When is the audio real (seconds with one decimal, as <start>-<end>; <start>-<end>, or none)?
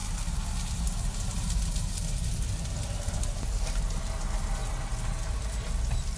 4.6-5.3